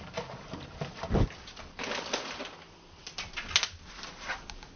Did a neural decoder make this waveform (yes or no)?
no